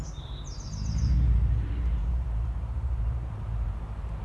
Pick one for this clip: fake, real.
fake